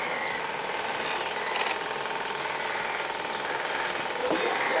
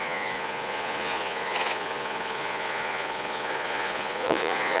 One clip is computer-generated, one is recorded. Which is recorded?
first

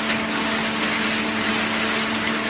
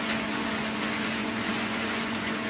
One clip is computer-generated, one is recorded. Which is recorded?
first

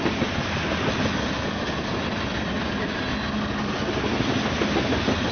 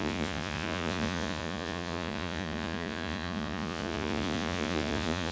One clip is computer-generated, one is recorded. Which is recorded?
first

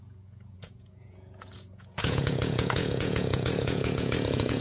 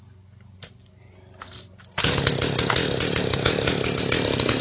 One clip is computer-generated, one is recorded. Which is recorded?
second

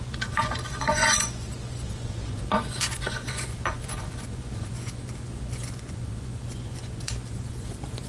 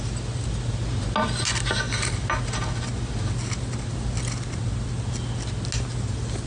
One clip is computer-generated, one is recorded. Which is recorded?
second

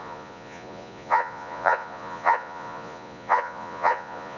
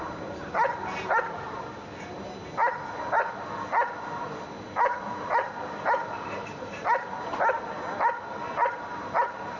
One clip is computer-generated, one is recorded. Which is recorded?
second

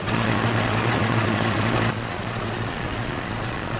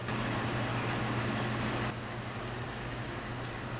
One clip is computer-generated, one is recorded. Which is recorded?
second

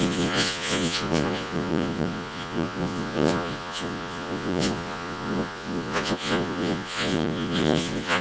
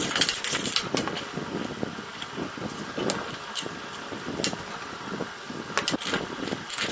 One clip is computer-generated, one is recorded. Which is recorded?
second